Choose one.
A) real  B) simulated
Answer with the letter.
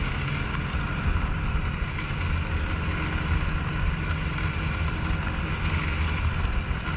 A